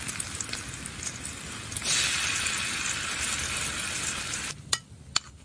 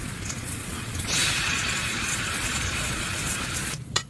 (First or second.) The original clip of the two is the first